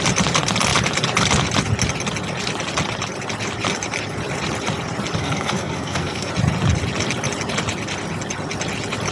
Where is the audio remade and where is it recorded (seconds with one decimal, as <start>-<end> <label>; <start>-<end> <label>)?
0.0-5.2 recorded; 5.2-6.3 remade; 6.3-9.1 recorded